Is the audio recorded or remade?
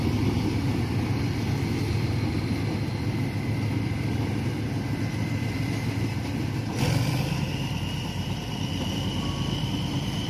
recorded